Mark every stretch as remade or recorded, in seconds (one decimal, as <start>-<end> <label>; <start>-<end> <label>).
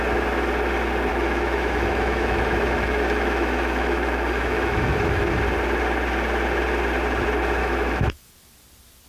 0.0-1.1 recorded; 1.1-5.4 remade; 5.4-7.6 recorded; 7.6-8.3 remade; 8.3-9.1 recorded